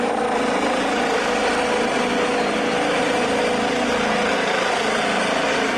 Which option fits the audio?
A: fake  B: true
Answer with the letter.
B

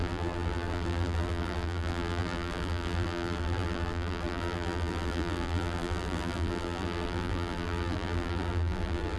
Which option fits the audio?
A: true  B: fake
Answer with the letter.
B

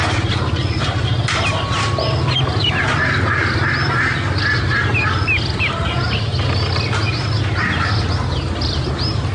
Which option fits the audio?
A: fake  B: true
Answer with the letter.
B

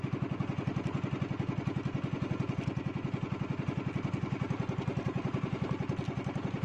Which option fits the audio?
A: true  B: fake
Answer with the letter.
A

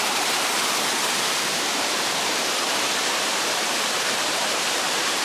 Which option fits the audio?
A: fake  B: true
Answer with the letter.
A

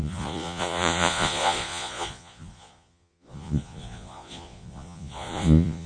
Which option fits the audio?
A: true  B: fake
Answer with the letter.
B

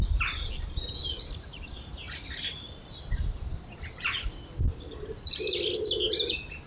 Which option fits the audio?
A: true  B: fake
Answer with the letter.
A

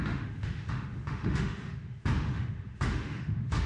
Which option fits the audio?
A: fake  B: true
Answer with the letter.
A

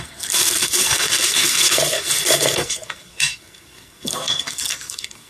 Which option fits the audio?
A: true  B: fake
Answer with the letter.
B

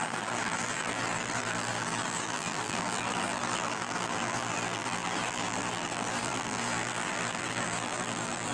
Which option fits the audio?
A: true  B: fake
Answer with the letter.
B